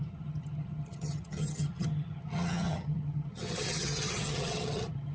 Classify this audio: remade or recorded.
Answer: remade